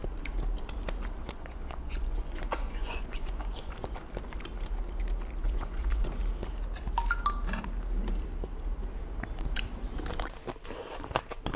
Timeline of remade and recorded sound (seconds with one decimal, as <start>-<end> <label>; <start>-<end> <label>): 0.0-1.2 recorded; 1.2-3.7 remade; 3.7-5.4 recorded; 5.4-6.2 remade; 6.2-11.6 recorded